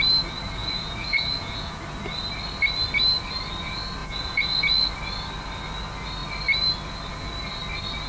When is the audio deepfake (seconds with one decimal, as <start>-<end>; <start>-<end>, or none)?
0.6-1.8; 4.0-4.9